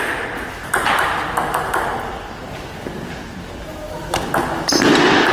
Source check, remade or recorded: recorded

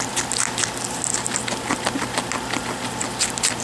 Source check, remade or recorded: recorded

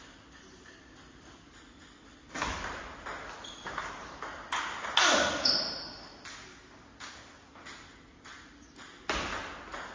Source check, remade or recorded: recorded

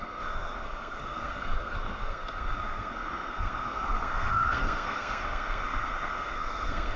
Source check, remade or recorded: remade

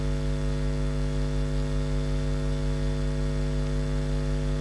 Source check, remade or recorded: recorded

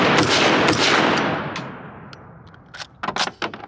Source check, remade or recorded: recorded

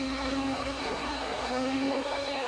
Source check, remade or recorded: remade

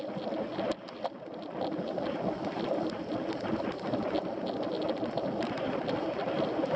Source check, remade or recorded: recorded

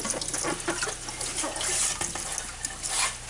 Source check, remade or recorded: recorded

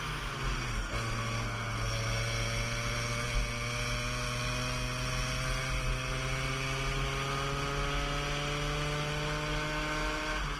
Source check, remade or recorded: recorded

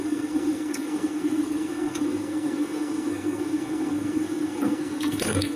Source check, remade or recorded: remade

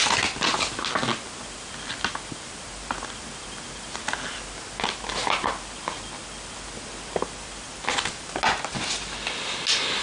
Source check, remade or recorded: recorded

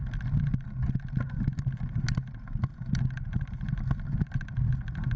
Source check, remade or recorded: recorded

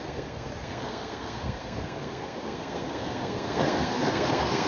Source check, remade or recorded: remade